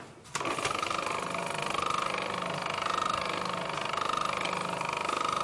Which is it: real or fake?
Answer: real